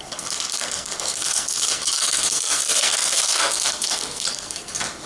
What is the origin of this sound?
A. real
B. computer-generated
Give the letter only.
B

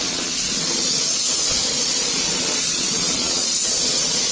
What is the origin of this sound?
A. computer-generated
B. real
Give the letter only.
A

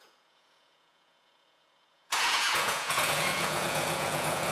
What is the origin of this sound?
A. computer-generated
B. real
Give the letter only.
A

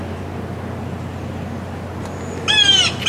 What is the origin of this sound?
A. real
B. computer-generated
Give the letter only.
A